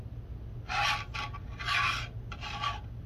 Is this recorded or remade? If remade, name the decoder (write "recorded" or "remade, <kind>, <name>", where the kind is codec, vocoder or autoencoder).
recorded